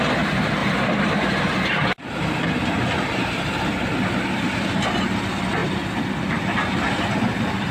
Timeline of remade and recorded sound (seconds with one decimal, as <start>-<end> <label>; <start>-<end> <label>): 0.0-0.6 recorded; 0.6-4.8 remade; 4.8-7.7 recorded

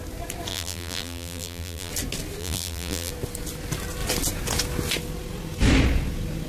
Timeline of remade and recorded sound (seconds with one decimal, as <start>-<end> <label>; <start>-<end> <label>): 0.0-0.5 recorded; 0.5-1.9 remade; 1.9-2.4 recorded; 2.4-3.1 remade; 3.1-6.5 recorded